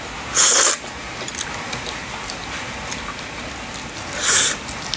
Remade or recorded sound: recorded